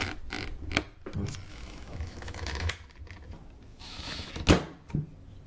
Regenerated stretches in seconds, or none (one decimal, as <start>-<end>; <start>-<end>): 1.5-2.7; 3.7-4.3